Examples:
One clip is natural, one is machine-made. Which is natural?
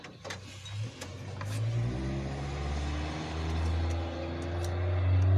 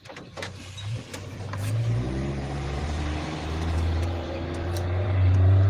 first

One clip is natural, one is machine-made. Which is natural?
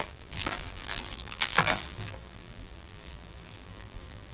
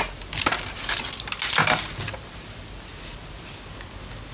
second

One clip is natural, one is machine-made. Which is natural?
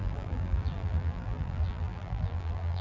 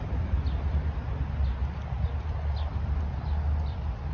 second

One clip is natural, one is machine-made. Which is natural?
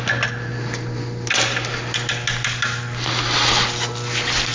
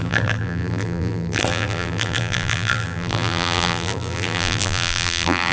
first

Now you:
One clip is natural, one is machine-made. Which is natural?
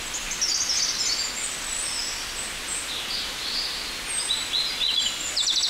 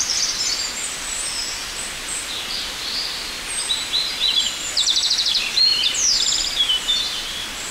first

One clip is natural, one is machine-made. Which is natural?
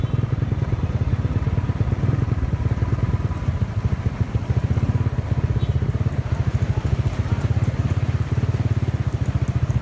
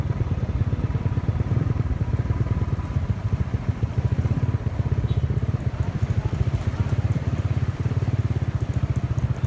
first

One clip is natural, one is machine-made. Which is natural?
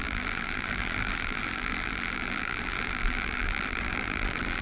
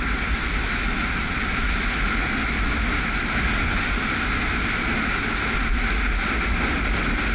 second